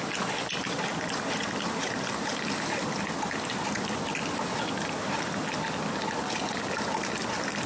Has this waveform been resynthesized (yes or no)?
no